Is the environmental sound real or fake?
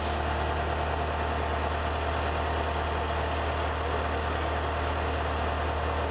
real